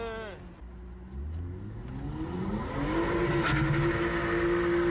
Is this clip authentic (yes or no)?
yes